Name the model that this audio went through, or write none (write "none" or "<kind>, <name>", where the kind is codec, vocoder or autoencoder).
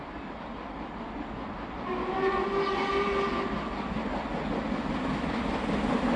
none